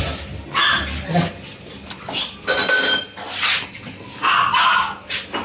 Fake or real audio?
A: real